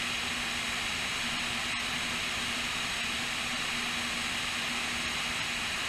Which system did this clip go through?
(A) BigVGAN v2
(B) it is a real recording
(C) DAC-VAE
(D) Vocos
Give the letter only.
B